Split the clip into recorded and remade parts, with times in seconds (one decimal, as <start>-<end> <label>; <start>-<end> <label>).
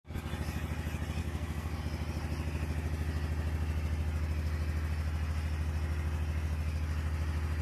0.0-1.2 recorded; 1.2-1.8 remade; 1.8-7.6 recorded